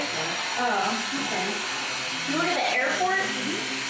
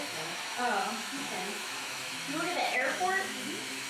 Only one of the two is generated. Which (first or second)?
second